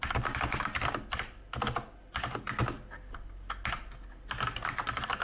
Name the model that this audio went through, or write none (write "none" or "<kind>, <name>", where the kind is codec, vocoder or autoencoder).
none